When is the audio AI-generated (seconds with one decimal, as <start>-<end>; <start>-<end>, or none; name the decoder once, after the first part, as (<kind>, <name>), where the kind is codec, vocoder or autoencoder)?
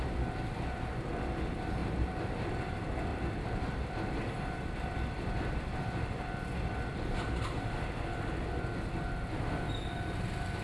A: 1.8-2.5 (vocoder, BigVGAN v2); 3.1-3.9